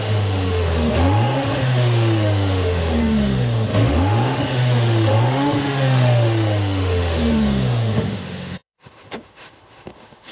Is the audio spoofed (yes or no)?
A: yes